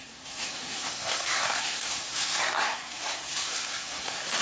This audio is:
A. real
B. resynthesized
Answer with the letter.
B